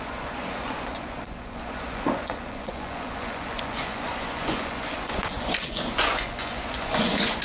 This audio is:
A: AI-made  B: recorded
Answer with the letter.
A